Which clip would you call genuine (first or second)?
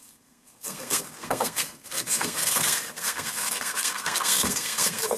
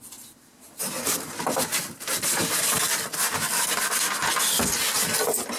second